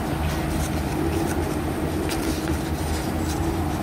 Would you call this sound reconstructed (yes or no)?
yes